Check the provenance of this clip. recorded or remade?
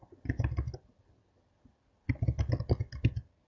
recorded